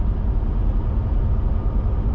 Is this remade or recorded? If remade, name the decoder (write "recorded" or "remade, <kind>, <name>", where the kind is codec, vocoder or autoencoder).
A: recorded